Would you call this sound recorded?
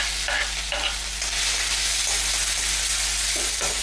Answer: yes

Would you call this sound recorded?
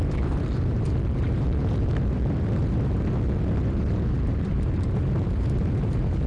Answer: no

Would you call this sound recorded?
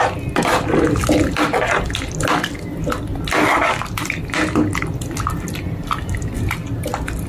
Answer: yes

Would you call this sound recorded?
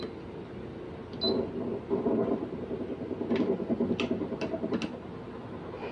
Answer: yes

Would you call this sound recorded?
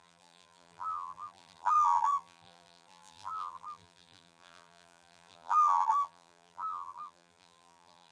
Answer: no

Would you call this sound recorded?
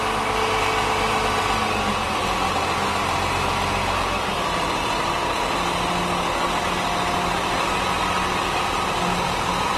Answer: yes